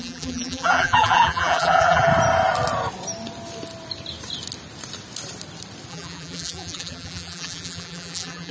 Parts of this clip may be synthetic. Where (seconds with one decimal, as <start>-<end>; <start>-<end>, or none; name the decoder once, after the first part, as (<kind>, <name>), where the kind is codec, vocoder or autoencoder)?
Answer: 0.0-2.1 (vocoder, BigVGAN v2); 5.9-8.5

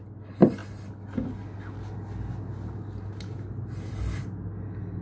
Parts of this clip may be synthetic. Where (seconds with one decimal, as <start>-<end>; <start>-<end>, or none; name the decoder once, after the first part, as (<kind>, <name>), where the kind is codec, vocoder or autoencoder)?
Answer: none

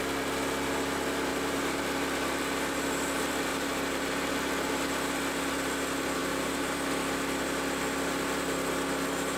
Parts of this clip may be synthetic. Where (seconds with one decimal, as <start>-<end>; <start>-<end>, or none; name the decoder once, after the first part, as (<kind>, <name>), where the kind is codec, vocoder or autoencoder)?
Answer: 1.3-1.8 (vocoder, BigVGAN v2); 3.5-4.3; 6.2-6.9

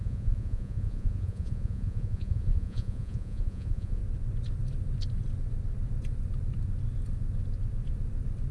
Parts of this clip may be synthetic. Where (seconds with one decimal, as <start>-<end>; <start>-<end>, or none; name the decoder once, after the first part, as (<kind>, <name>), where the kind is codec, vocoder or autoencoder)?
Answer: 0.0-4.0 (vocoder, Vocos)

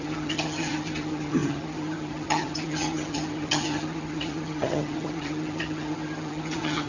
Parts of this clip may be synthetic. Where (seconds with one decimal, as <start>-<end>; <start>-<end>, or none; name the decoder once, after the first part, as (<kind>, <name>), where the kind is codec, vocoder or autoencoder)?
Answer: 0.0-6.9 (vocoder, HiFi-GAN)

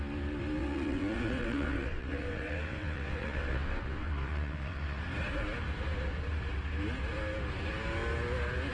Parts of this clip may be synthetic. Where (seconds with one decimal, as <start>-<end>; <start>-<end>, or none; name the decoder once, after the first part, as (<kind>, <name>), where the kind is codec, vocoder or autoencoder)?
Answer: 0.6-5.0 (vocoder, WaveNeXt)

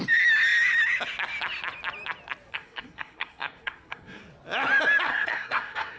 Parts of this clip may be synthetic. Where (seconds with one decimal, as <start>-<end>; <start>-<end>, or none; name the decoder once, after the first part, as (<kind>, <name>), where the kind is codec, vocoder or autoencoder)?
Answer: 2.5-4.2 (codec, SNAC); 5.1-6.0

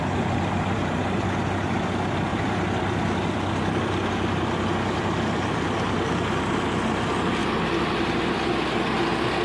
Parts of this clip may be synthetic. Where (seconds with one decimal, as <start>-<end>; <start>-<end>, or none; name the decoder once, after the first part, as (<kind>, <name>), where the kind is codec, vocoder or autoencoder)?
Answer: 2.3-6.5 (vocoder, BigVGAN v2)